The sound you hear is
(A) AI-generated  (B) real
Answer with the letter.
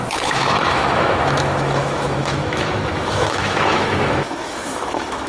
A